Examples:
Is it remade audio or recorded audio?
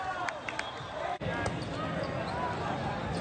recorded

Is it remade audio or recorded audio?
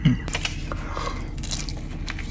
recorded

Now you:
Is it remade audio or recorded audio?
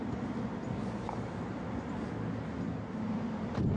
recorded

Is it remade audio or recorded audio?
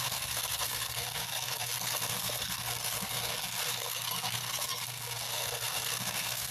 remade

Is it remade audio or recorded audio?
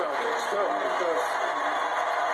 recorded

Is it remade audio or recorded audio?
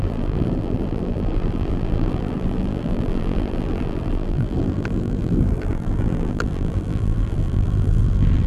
remade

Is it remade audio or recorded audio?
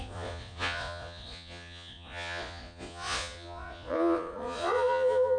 remade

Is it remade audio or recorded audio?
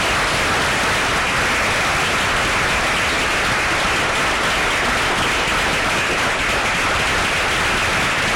recorded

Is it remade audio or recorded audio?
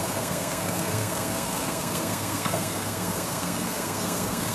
remade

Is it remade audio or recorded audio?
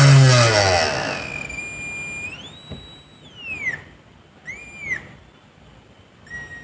recorded